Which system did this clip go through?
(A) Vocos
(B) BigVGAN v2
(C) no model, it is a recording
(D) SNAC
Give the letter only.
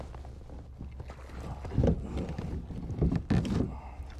C